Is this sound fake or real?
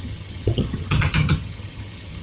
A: fake